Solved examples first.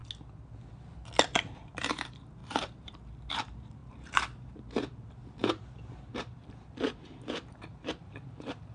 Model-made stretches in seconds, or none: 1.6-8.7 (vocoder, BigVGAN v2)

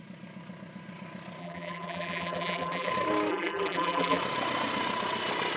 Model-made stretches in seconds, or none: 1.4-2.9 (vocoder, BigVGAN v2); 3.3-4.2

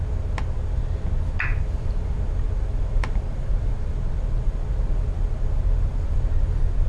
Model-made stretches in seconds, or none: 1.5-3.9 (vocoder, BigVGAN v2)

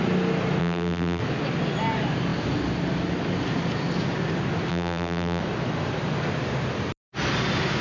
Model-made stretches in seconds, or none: 0.6-1.2 (vocoder, BigVGAN v2); 4.7-5.4

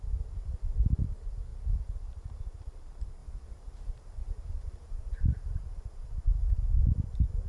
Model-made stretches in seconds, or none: 1.5-2.4 (vocoder, BigVGAN v2); 3.2-6.1

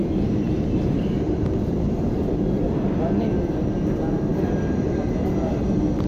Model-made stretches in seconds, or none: 0.0-3.7 (vocoder, BigVGAN v2); 4.3-6.1

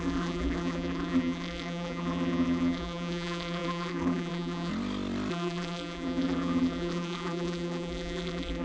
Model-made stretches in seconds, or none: 0.0-4.7 (vocoder, BigVGAN v2); 5.3-8.6